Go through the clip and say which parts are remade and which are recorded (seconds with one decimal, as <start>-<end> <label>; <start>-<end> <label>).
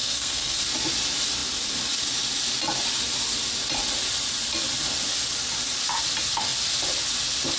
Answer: 0.0-0.6 remade; 0.6-7.6 recorded